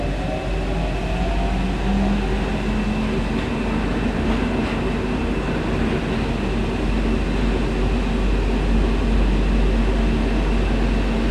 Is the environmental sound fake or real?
real